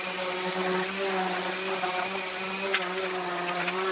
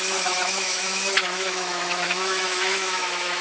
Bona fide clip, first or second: first